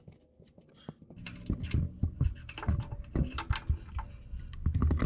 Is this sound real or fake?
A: real